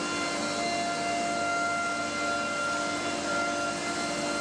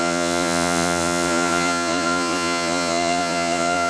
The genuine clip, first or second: first